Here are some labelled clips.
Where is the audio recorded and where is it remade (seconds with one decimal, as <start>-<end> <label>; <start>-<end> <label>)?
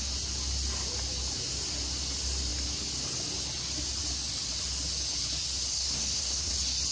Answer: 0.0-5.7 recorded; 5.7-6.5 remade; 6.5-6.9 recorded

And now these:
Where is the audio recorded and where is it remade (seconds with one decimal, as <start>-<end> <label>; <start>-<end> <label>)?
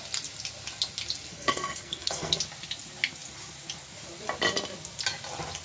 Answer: 0.0-1.3 recorded; 1.3-2.4 remade; 2.4-5.6 recorded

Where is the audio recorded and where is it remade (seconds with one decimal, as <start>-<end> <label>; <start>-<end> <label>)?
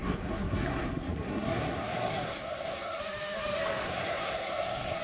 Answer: 0.0-3.0 remade; 3.0-3.8 recorded; 3.8-5.0 remade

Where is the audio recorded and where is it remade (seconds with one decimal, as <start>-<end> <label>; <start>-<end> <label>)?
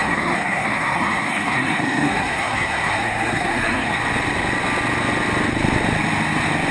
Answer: 0.0-4.0 remade; 4.0-6.7 recorded